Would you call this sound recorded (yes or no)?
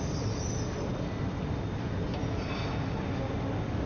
yes